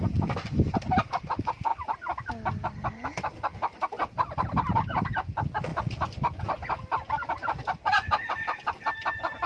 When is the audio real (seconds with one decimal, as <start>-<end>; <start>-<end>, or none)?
1.7-2.3